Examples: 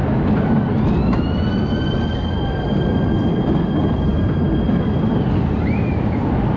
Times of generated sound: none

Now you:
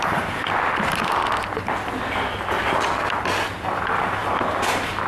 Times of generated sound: 0.0-0.4 (vocoder, BigVGAN v2); 3.5-5.1

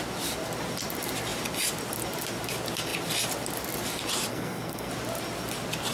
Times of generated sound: 4.3-4.9 (codec, SNAC)

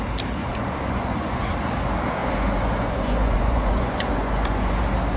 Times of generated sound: 0.4-1.5 (vocoder, Vocos); 2.2-4.8

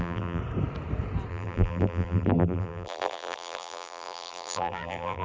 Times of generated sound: 0.0-0.4 (vocoder, BigVGAN v2); 1.3-5.2

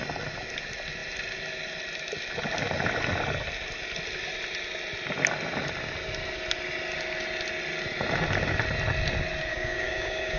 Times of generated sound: 9.5-10.4 (codec, DAC)